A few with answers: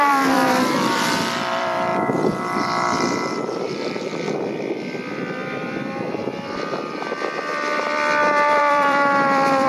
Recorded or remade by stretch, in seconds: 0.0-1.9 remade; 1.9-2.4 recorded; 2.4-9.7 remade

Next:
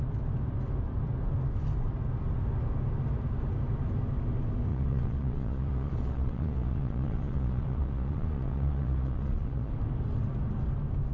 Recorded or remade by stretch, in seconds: 0.0-4.7 recorded; 4.7-9.7 remade; 9.7-11.1 recorded

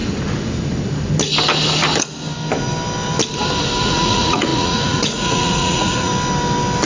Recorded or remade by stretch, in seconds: 0.0-3.8 recorded; 3.8-6.1 remade; 6.1-6.9 recorded